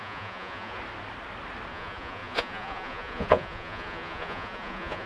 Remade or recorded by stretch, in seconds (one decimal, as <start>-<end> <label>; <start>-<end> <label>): 0.0-0.8 remade; 0.8-1.7 recorded; 1.7-5.1 remade